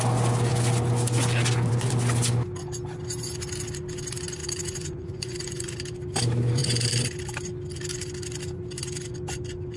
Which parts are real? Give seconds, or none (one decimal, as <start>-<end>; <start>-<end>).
0.0-4.4; 5.7-9.8